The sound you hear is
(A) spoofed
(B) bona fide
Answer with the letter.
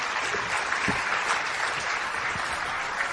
B